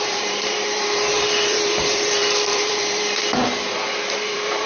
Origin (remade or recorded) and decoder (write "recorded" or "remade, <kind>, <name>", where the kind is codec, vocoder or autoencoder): remade, vocoder, BigVGAN v2